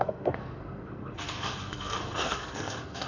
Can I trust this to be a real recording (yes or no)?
no